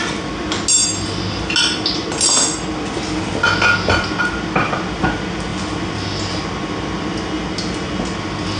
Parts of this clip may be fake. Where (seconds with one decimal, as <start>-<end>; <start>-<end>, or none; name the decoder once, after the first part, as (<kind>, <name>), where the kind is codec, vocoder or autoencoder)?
none